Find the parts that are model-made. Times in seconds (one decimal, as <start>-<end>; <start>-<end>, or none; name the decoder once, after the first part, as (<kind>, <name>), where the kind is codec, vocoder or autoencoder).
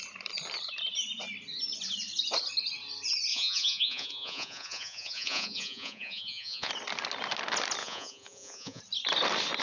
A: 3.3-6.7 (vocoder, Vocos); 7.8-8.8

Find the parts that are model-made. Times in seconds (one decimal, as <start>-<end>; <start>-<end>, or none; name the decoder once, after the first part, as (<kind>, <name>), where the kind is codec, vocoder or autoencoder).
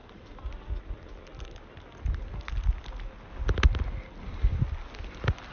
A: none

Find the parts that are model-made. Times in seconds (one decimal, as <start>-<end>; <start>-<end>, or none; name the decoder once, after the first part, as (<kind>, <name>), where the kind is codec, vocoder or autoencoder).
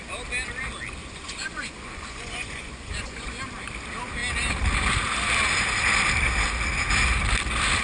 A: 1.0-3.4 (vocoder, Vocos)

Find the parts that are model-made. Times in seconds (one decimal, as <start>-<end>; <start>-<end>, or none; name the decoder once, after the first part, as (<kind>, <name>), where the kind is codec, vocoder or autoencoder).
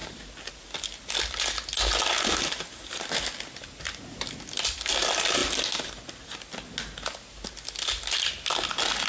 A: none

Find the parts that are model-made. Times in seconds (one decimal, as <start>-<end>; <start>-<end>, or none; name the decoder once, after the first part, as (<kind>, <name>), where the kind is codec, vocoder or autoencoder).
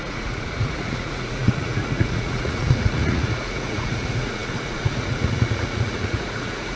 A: 0.0-6.8 (vocoder, Vocos)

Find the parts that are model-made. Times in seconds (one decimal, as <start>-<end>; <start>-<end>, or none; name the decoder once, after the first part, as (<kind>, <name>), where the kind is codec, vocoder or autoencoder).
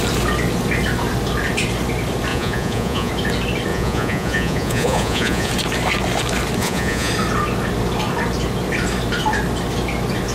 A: 2.3-3.1 (vocoder, Vocos); 3.7-5.5; 6.6-7.1